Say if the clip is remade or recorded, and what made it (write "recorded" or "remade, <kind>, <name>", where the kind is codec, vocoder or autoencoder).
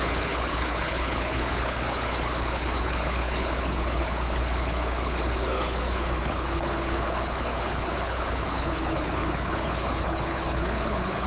remade, codec, HILCodec